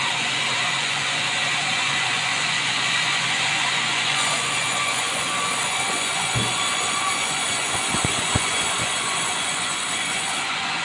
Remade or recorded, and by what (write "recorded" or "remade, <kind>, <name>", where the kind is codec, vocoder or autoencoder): remade, vocoder, Vocos